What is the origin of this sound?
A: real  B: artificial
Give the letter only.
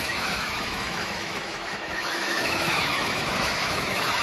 B